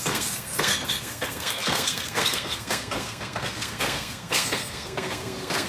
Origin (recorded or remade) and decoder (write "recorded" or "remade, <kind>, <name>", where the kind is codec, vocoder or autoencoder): remade, codec, SNAC